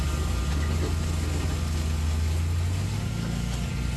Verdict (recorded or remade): recorded